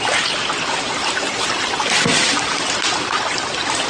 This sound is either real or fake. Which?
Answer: real